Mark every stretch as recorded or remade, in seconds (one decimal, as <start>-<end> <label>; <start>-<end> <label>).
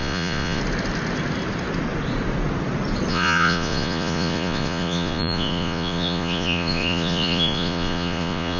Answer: 0.0-0.6 remade; 0.6-3.1 recorded; 3.1-8.6 remade